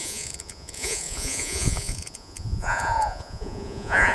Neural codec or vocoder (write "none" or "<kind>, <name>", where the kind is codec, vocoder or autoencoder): vocoder, Vocos